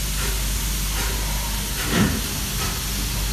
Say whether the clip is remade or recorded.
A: recorded